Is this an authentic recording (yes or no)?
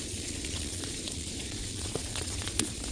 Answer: no